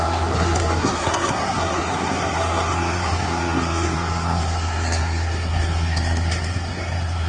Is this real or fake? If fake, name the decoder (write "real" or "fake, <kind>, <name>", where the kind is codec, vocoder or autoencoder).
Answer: fake, codec, SNAC